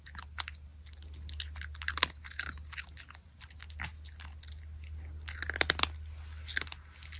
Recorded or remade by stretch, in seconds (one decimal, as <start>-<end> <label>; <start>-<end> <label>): 0.0-7.2 recorded